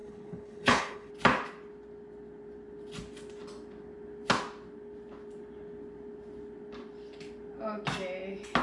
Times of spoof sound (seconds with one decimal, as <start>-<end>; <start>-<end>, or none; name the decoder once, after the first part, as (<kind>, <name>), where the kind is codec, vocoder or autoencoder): 0.0-1.1 (codec, HILCodec)